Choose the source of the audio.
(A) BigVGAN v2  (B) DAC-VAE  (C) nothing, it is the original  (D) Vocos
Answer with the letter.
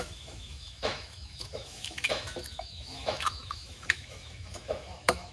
B